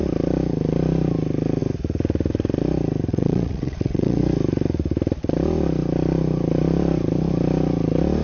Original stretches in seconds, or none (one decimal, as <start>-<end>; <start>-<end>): 0.0-3.1; 4.2-8.2